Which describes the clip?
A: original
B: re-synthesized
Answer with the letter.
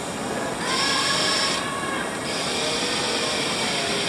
A